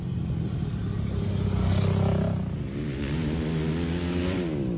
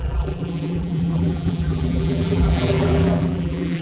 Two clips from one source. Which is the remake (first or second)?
second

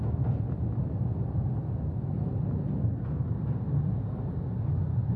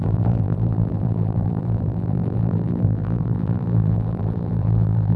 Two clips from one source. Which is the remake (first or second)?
second